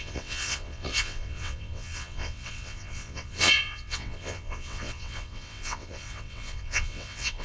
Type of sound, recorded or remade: remade